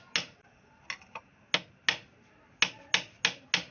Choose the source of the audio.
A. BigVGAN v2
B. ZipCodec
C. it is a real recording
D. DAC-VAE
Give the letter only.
C